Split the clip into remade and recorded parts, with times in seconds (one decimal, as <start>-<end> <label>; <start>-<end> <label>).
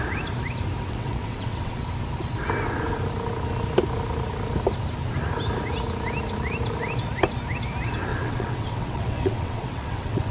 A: 0.0-0.8 recorded; 0.8-1.8 remade; 1.8-8.1 recorded; 8.1-10.3 remade